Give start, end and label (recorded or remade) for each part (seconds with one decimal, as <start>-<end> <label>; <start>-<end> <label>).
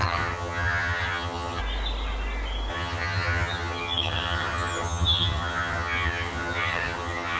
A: 0.0-1.6 remade; 1.6-2.7 recorded; 2.7-7.4 remade